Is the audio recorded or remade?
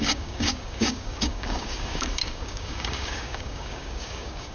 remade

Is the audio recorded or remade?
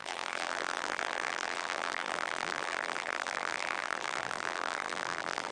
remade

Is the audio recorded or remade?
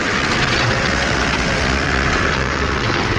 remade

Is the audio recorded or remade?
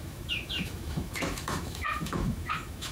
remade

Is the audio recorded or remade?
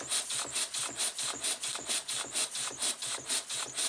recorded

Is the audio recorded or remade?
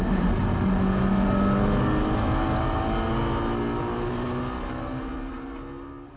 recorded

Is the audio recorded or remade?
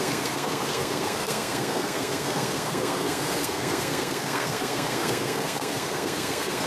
remade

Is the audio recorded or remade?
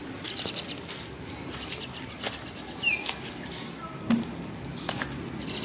recorded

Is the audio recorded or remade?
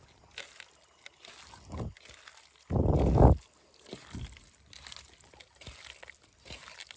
recorded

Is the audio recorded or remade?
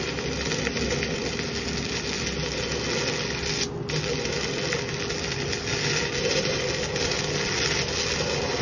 recorded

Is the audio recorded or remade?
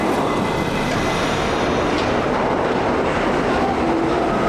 recorded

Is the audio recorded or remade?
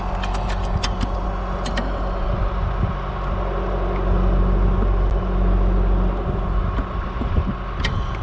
recorded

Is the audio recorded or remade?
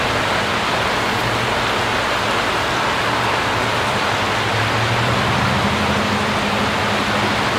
recorded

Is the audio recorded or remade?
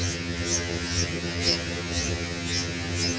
remade